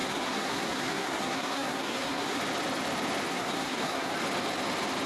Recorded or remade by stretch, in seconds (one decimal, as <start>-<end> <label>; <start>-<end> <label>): 0.0-2.4 remade; 2.4-3.3 recorded; 3.3-4.1 remade; 4.1-5.1 recorded